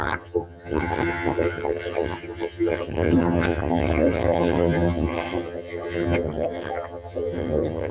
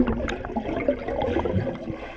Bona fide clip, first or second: second